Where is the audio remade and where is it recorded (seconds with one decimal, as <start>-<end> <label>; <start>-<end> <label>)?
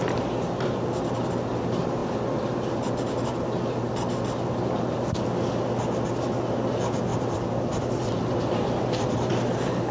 0.0-7.1 recorded; 7.1-9.3 remade; 9.3-9.9 recorded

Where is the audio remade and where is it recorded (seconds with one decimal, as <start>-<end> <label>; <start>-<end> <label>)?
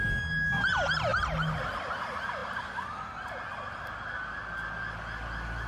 0.0-5.7 recorded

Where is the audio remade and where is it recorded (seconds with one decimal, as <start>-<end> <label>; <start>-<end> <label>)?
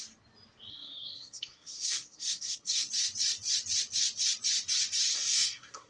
0.0-0.7 recorded; 0.7-2.9 remade; 2.9-5.1 recorded; 5.1-5.9 remade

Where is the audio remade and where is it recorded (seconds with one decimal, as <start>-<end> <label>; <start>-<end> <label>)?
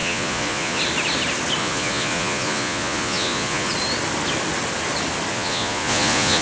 0.0-0.8 remade; 0.8-1.6 recorded; 1.6-3.7 remade; 3.7-5.3 recorded; 5.3-6.4 remade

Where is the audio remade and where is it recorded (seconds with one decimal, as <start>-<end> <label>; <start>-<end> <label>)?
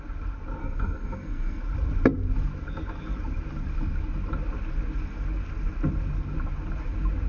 0.0-0.6 recorded; 0.6-1.6 remade; 1.6-7.3 recorded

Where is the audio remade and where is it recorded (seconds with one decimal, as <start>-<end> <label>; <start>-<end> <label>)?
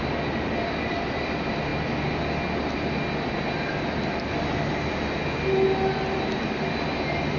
0.0-7.4 recorded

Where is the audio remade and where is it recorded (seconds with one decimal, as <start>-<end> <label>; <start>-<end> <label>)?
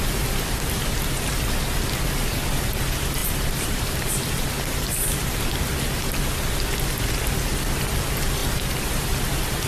0.0-3.2 recorded; 3.2-5.4 remade; 5.4-8.4 recorded; 8.4-9.2 remade; 9.2-9.7 recorded